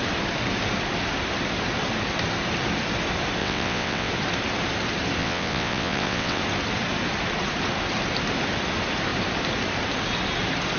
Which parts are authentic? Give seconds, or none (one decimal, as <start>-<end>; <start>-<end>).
0.0-3.4; 4.1-5.2; 6.4-10.8